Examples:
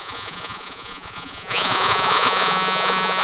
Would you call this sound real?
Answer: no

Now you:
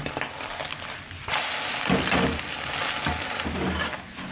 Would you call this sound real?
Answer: yes